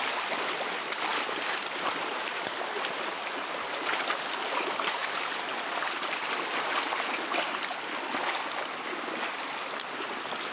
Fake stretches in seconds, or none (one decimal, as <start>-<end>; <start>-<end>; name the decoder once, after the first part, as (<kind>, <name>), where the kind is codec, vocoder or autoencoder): 1.1-2.6 (vocoder, BigVGAN v2)